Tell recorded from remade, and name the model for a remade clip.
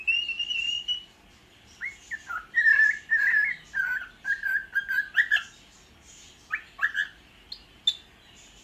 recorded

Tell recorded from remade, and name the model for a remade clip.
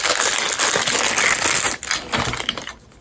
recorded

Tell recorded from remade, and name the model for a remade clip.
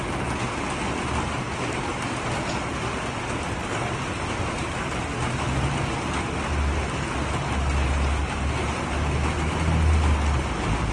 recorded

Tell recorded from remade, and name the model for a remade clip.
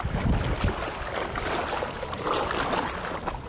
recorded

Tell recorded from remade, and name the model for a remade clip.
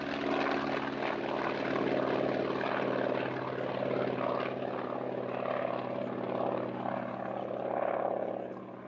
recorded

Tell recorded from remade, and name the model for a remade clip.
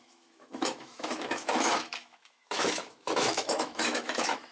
remade, autoencoder, DAC-VAE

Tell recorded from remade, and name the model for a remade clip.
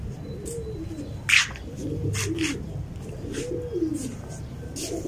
recorded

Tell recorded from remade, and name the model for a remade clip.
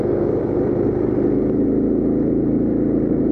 recorded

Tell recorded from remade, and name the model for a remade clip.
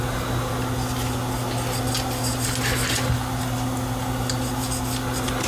recorded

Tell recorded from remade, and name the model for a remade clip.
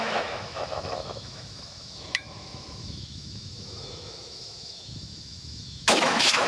remade, autoencoder, DAC-VAE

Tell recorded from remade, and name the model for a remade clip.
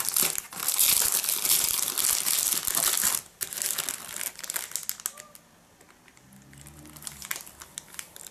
recorded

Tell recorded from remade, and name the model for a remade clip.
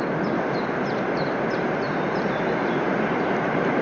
recorded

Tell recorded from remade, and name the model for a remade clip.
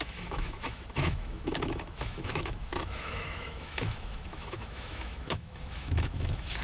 remade, autoencoder, DAC-VAE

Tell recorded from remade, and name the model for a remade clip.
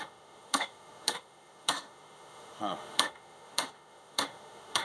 remade, autoencoder, DAC-VAE